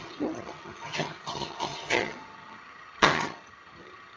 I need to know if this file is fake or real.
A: fake